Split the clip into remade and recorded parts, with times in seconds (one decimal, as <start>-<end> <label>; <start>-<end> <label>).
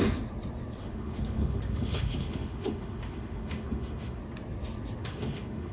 0.0-0.8 recorded; 0.8-4.2 remade; 4.2-5.0 recorded; 5.0-5.7 remade